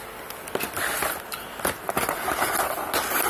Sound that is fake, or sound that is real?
real